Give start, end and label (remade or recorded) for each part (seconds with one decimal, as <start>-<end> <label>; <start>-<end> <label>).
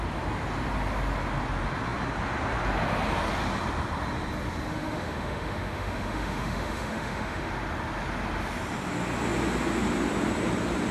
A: 0.0-4.7 recorded; 4.7-7.5 remade; 7.5-10.9 recorded